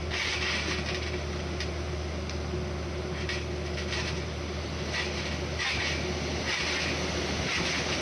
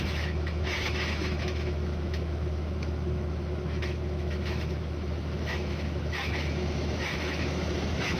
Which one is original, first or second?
first